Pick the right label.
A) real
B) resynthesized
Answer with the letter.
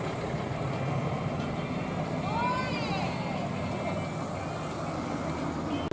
A